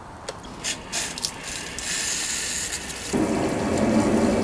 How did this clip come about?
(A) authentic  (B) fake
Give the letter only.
A